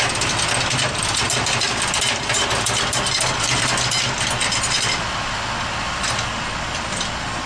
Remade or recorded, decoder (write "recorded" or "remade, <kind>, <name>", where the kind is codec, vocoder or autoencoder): recorded